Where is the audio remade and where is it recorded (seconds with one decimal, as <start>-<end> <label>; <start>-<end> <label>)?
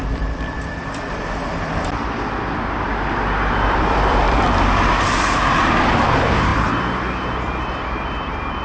0.0-8.6 remade